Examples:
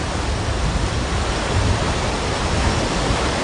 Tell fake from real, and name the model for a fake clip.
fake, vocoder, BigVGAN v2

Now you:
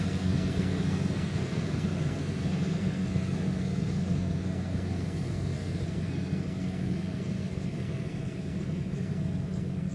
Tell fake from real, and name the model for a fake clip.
fake, codec, SNAC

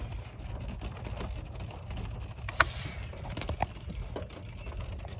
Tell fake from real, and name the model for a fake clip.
real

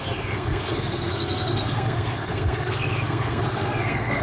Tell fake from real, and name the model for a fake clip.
fake, codec, SNAC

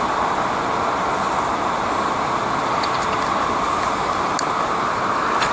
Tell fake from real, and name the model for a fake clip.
real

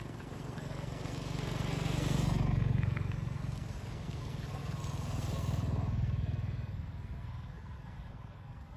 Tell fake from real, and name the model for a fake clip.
fake, codec, SNAC